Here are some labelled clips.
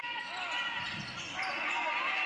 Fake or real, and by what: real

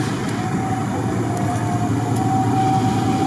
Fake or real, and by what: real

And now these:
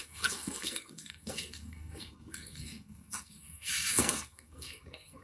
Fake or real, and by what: fake, codec, SNAC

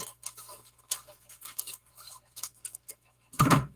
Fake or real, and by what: fake, codec, SNAC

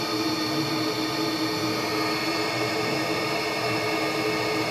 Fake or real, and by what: real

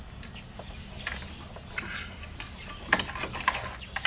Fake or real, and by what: real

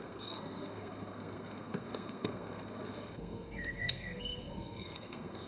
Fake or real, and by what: fake, codec, SNAC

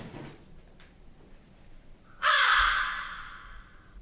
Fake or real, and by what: real